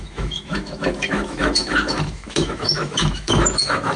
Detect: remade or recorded remade